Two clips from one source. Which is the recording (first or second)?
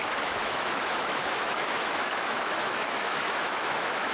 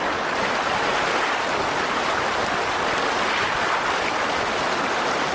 second